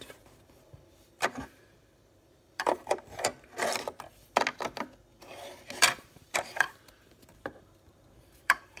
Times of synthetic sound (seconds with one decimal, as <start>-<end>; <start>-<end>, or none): 0.0-3.3; 5.8-8.8